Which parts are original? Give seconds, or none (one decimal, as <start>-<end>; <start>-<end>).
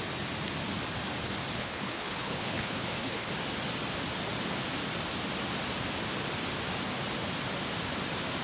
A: 0.0-1.6; 3.3-8.4